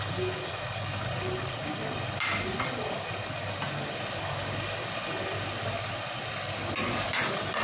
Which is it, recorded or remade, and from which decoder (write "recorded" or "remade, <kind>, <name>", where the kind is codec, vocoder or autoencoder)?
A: recorded